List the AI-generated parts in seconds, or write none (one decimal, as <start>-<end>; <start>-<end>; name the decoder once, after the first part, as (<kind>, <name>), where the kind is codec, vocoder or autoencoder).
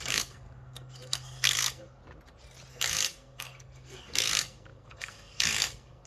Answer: 0.0-2.0 (codec, SNAC); 2.7-6.1